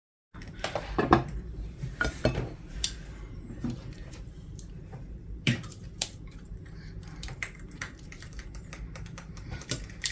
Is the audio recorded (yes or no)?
no